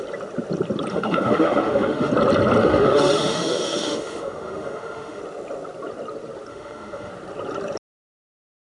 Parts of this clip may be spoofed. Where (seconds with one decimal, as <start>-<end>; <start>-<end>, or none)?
0.9-2.1; 2.6-5.2; 6.5-7.1